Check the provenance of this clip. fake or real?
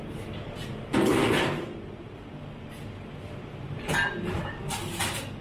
fake